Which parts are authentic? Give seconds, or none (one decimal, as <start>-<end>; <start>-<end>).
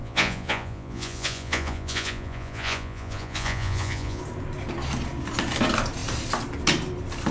4.2-7.3